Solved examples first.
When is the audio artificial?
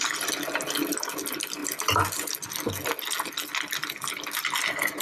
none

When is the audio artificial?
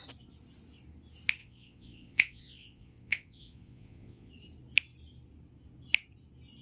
1.4-4.3 (vocoder, Vocos)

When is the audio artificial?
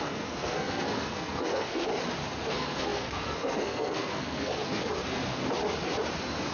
0.0-1.9 (codec, SNAC); 2.5-5.4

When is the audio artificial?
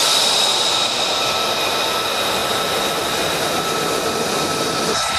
0.0-1.3 (vocoder, BigVGAN v2)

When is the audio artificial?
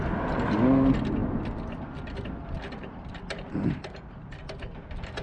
none